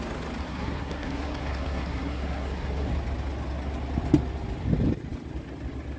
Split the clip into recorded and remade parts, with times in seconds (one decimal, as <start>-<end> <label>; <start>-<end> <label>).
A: 0.0-0.4 recorded; 0.4-2.9 remade; 2.9-6.0 recorded